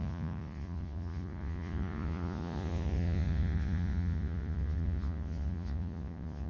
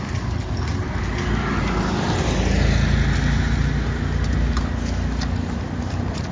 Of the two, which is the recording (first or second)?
second